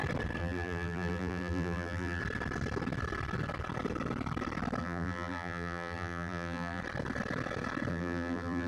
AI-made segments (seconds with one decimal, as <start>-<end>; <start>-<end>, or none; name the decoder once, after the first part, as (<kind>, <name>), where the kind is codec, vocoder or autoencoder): 0.4-2.2 (vocoder, BigVGAN v2); 4.8-6.8; 7.9-8.7